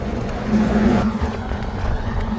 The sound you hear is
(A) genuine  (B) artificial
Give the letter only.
B